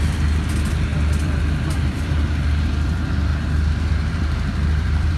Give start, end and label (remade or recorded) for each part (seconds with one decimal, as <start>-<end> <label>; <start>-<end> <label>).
0.0-3.3 remade; 3.3-3.9 recorded; 3.9-5.2 remade